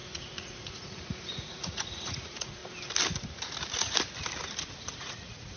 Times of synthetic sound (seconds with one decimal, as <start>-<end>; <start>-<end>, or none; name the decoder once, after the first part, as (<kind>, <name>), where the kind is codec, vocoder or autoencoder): 0.0-2.6 (vocoder, Vocos); 5.0-5.6